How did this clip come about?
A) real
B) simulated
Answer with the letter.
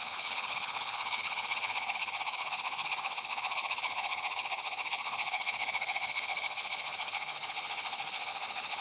B